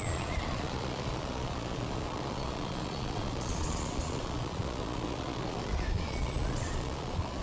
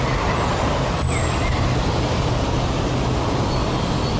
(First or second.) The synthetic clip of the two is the first